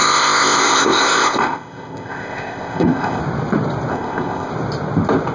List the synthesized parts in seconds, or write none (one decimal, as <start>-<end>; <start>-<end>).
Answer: 0.0-3.2; 3.9-4.5